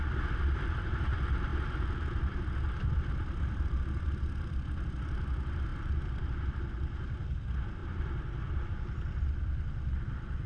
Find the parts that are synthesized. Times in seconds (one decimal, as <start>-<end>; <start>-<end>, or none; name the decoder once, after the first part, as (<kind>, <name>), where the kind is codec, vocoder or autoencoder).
0.0-1.5 (vocoder, BigVGAN v2); 2.7-10.5